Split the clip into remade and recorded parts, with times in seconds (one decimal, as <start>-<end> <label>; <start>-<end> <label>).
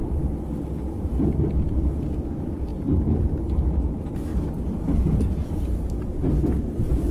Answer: 0.0-2.7 recorded; 2.7-3.4 remade; 3.4-4.3 recorded; 4.3-4.9 remade; 4.9-7.1 recorded